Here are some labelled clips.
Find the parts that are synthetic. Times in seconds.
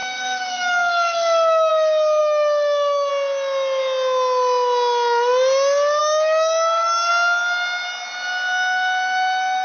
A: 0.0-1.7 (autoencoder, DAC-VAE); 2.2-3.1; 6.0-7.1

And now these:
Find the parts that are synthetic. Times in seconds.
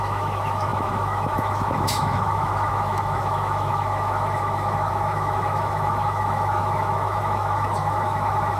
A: 0.0-8.6 (autoencoder, DAC-VAE)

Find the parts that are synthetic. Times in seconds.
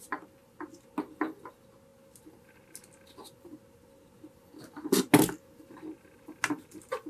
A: none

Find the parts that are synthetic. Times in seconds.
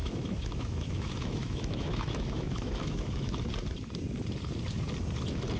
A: 0.0-3.4 (autoencoder, DAC-VAE)